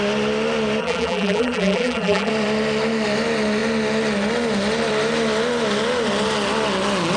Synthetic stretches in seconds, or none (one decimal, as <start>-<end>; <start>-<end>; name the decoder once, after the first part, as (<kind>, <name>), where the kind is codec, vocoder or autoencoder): 0.8-2.3 (vocoder, BigVGAN v2)